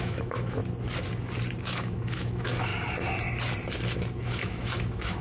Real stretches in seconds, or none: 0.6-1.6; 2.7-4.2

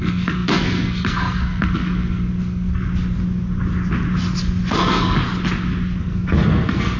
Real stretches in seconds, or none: 2.9-4.7; 5.2-6.0

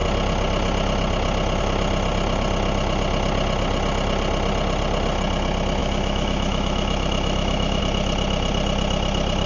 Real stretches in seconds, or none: 0.0-5.8; 7.8-9.5

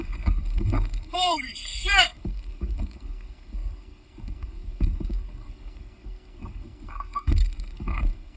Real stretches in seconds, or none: none